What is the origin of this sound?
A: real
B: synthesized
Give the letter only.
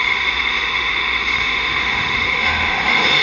B